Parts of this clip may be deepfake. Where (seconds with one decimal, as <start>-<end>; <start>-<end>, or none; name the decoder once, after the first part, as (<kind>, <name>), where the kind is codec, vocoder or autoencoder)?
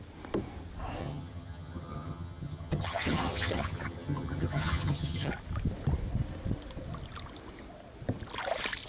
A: 1.0-5.3 (vocoder, HiFi-GAN)